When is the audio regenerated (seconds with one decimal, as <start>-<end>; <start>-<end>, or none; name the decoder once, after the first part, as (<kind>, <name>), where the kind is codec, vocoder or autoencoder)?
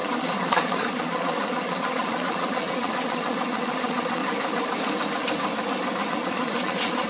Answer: 0.0-4.2 (vocoder, Vocos); 6.1-7.1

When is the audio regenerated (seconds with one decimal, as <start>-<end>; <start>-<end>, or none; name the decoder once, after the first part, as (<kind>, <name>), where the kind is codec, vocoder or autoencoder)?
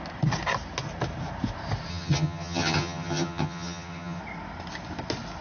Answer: 1.9-4.2 (vocoder, HiFi-GAN)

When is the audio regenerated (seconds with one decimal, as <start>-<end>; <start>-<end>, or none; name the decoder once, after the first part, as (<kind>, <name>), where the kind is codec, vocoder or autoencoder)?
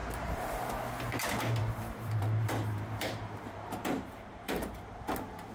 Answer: 0.0-0.7 (vocoder, BigVGAN v2); 1.6-4.9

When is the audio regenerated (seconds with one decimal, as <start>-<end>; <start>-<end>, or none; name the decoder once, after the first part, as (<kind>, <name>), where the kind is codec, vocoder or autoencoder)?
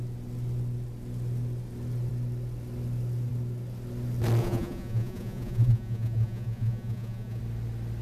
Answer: 4.4-7.4 (vocoder, Vocos)